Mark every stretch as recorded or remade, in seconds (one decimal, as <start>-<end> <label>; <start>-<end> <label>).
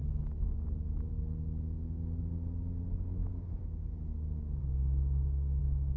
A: 0.0-4.6 recorded; 4.6-5.6 remade; 5.6-6.0 recorded